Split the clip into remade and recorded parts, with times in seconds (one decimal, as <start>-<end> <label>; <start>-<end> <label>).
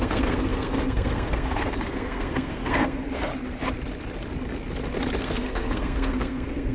0.0-3.3 remade; 3.3-5.2 recorded; 5.2-6.7 remade